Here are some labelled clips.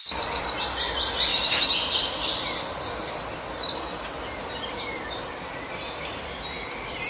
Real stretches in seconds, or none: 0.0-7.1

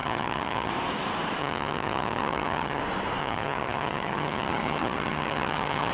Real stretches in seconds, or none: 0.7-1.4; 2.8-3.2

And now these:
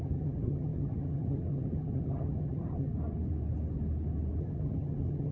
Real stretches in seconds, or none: 2.9-4.4

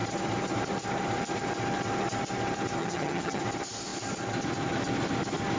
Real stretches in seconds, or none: 0.0-2.8; 3.4-5.6

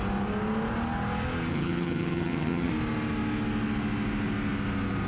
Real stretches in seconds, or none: 0.0-1.5; 2.7-5.1

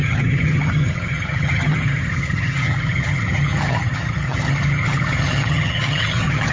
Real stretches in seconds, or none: none